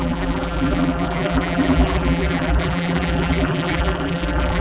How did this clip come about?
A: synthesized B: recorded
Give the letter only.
A